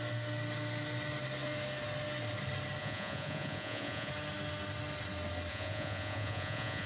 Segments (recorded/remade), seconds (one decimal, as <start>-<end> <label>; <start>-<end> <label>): 0.0-2.8 recorded; 2.8-4.1 remade; 4.1-5.5 recorded; 5.5-6.9 remade